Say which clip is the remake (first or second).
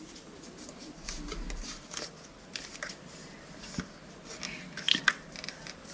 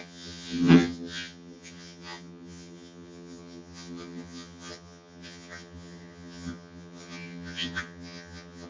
second